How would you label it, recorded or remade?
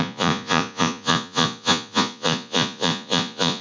remade